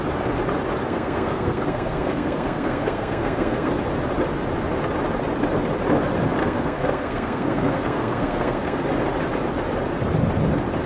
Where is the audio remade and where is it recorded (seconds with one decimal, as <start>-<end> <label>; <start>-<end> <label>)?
0.0-0.8 recorded; 0.8-3.7 remade; 3.7-6.4 recorded; 6.4-8.8 remade; 8.8-10.9 recorded